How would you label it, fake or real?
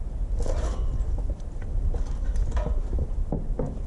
real